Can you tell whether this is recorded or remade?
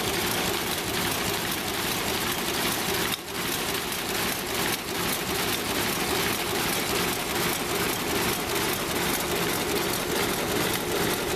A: recorded